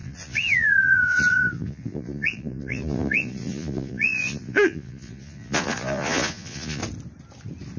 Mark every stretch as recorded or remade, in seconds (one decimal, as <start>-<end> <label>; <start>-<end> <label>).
0.0-6.8 remade; 6.8-7.8 recorded

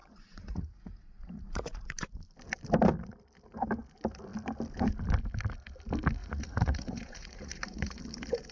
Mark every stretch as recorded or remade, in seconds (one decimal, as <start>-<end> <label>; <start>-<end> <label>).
0.0-2.2 remade; 2.2-6.2 recorded; 6.2-8.0 remade; 8.0-8.5 recorded

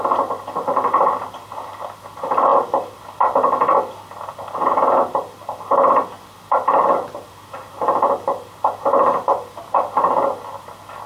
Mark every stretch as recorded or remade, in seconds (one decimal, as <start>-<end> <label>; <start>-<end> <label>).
0.0-11.1 recorded

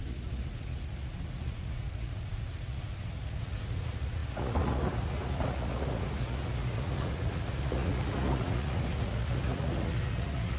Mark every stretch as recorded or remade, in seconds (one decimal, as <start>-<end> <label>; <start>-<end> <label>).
0.0-10.6 remade